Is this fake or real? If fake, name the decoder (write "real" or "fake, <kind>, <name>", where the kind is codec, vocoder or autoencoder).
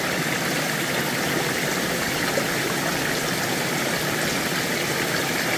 real